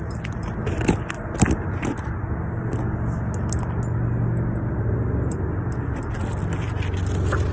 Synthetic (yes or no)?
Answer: no